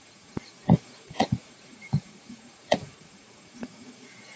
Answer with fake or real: fake